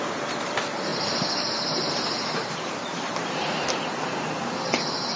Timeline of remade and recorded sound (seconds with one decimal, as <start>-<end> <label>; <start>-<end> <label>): 0.0-5.2 remade